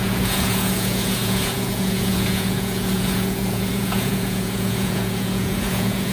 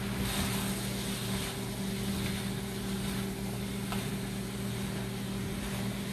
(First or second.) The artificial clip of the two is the first